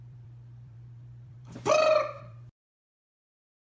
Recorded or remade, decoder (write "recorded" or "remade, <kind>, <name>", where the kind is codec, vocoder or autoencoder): remade, vocoder, BigVGAN v2